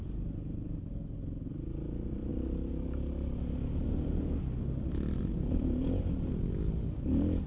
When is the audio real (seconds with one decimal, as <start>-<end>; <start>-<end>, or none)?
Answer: 0.0-7.5